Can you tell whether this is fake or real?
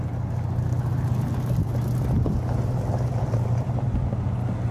real